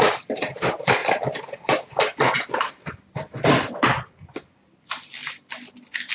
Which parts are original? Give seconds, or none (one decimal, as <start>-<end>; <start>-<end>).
1.0-2.5; 5.2-6.1